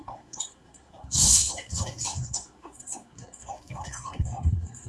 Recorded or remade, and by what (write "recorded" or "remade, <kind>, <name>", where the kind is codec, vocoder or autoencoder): remade, codec, SNAC